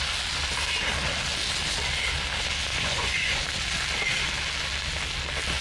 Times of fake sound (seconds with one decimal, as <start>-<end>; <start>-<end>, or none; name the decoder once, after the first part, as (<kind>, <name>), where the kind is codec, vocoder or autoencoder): 2.7-3.4 (vocoder, Vocos)